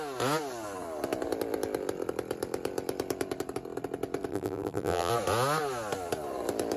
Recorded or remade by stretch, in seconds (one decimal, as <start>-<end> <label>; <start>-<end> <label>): 0.0-4.3 recorded; 4.3-5.1 remade; 5.1-6.8 recorded